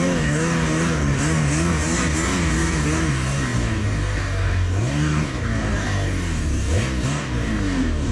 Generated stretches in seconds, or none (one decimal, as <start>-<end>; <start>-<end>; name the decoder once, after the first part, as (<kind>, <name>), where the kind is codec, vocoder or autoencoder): 0.0-8.1 (codec, DAC)